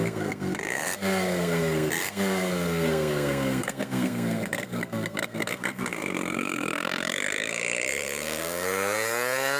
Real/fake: fake